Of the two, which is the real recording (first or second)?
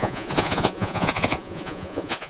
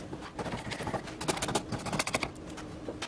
second